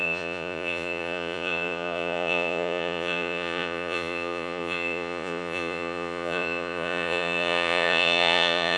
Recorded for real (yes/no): no